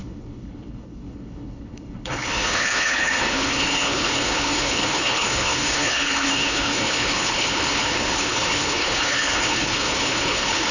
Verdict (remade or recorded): remade